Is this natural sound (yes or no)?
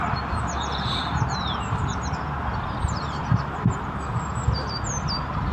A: yes